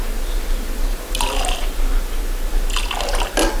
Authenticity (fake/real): real